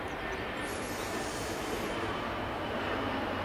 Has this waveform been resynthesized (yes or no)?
yes